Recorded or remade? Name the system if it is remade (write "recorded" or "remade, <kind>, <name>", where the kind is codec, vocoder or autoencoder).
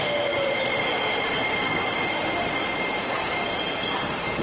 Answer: recorded